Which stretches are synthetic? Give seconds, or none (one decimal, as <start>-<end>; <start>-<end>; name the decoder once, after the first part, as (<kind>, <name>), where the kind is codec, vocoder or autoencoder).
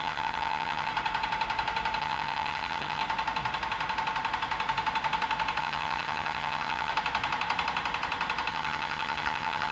0.0-0.9 (vocoder, HiFi-GAN); 2.0-3.0; 5.6-6.9; 8.5-9.7